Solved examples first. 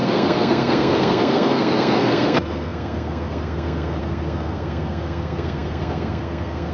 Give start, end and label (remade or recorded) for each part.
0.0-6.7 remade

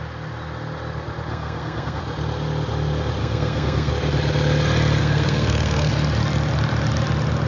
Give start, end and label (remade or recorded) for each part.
0.0-1.3 recorded; 1.3-2.0 remade; 2.0-3.2 recorded; 3.2-3.9 remade; 3.9-5.0 recorded; 5.0-5.9 remade; 5.9-7.5 recorded

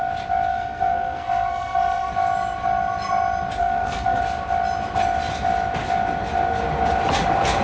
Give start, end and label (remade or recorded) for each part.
0.0-0.5 recorded; 0.5-2.1 remade; 2.1-3.6 recorded; 3.6-4.2 remade; 4.2-7.6 recorded

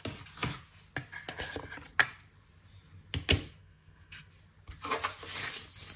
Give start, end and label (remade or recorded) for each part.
0.0-3.6 recorded; 3.6-4.3 remade; 4.3-6.0 recorded

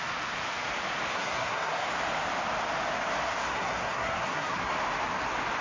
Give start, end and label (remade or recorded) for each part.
0.0-1.1 recorded; 1.1-1.9 remade; 1.9-3.4 recorded; 3.4-4.7 remade; 4.7-5.6 recorded

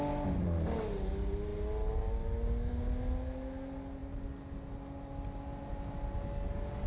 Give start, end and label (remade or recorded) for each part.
0.0-6.9 recorded

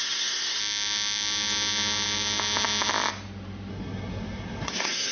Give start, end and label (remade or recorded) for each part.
0.0-0.6 remade; 0.6-3.7 recorded; 3.7-5.1 remade